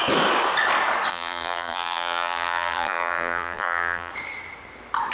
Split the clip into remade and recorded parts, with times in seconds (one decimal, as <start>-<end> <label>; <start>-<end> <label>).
0.0-1.1 recorded; 1.1-4.1 remade; 4.1-5.1 recorded